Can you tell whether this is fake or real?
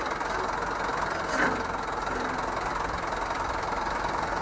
real